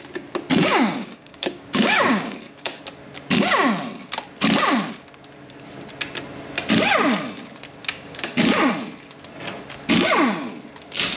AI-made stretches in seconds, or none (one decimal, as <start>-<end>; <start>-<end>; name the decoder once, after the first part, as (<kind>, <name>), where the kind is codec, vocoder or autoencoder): 0.6-2.8 (codec, DAC); 7.8-8.7

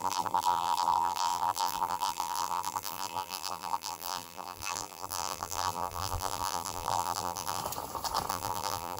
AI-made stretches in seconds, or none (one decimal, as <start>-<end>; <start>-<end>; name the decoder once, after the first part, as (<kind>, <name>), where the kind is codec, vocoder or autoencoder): 0.0-7.6 (vocoder, BigVGAN v2); 8.3-9.0

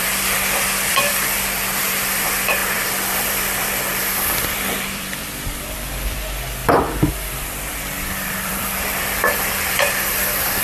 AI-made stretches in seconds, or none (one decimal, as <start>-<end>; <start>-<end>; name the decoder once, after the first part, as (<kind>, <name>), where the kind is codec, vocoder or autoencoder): 0.0-6.6 (vocoder, BigVGAN v2); 7.1-10.6

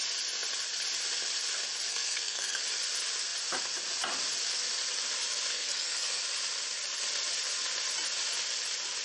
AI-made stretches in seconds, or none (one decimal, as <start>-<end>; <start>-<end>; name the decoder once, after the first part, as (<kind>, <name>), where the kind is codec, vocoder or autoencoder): 1.9-2.6 (codec, SNAC); 5.5-6.2

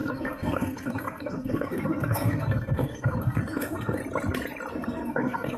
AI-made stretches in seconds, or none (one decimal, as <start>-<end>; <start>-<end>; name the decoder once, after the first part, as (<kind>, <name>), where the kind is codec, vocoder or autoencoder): 0.0-4.0 (codec, SNAC); 4.7-5.6